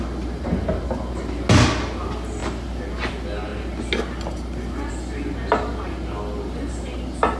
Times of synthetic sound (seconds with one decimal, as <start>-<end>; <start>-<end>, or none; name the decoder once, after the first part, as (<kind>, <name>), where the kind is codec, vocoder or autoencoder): none